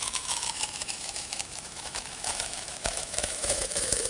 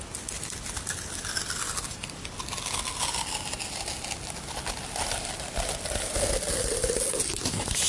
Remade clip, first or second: first